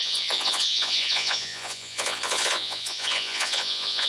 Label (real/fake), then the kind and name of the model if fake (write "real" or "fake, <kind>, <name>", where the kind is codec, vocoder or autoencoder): fake, vocoder, Vocos